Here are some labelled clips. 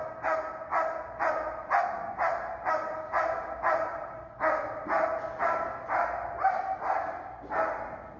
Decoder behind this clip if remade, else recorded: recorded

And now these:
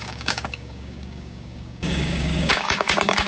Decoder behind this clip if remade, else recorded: remade, codec, DAC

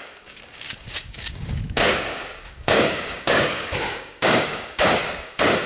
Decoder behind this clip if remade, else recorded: remade, codec, DAC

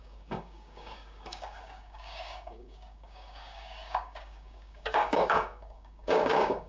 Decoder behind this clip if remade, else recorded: remade, codec, DAC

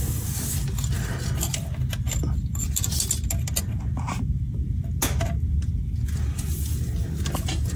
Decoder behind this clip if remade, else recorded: recorded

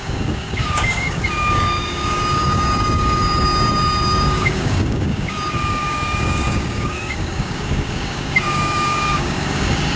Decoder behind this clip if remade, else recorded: remade, codec, DAC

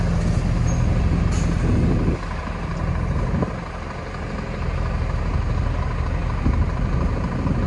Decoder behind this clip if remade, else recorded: recorded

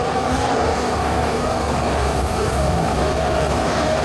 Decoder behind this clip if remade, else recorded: remade, codec, DAC